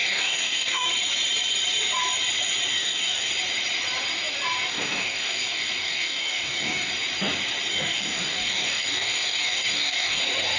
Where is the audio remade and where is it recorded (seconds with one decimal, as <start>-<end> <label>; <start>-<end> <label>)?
0.0-0.9 remade; 0.9-2.7 recorded; 2.7-3.3 remade; 3.3-4.7 recorded; 4.7-6.9 remade; 6.9-7.7 recorded; 7.7-10.2 remade; 10.2-10.6 recorded